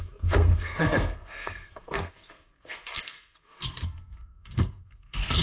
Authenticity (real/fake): fake